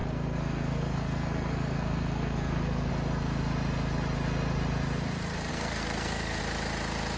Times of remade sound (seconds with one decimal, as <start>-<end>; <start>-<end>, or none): 0.0-2.9; 5.5-6.4